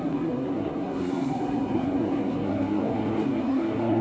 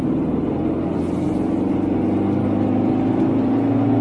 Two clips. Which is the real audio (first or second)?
second